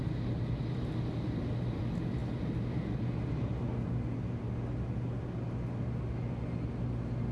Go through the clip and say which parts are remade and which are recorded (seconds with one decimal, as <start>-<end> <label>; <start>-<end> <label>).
0.0-7.3 recorded